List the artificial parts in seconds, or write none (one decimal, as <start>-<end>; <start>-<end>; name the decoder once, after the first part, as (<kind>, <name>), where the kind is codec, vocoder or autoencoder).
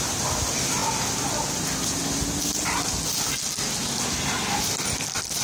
none